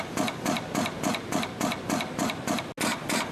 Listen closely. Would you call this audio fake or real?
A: real